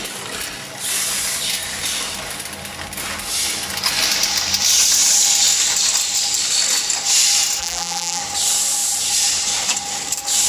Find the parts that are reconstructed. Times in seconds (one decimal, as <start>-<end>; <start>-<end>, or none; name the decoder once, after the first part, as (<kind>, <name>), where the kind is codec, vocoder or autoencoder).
7.6-8.2 (vocoder, BigVGAN v2)